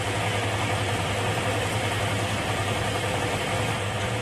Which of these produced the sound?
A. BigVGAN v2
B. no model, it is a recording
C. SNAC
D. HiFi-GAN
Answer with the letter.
A